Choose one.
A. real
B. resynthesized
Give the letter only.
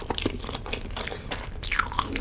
A